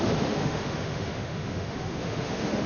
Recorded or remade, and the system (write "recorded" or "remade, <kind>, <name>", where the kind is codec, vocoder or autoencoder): remade, autoencoder, DAC-VAE